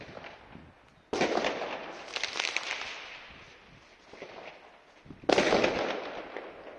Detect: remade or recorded recorded